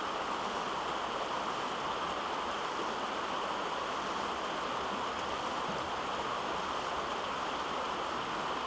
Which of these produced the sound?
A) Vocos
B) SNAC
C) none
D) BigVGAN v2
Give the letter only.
C